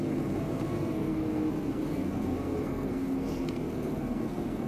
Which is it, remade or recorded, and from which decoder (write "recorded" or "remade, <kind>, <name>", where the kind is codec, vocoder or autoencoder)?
remade, codec, SNAC